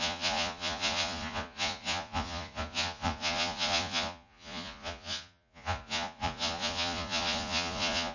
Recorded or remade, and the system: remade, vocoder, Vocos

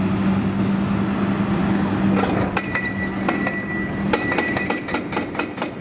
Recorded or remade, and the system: recorded